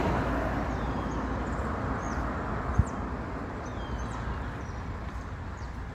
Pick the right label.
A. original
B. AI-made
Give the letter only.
A